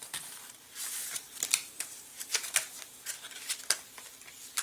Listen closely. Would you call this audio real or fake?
fake